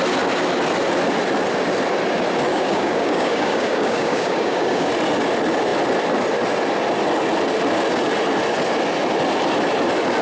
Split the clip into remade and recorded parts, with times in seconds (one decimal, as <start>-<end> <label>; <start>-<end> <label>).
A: 0.0-2.5 recorded; 2.5-4.9 remade; 4.9-10.2 recorded